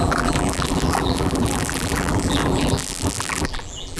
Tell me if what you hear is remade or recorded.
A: remade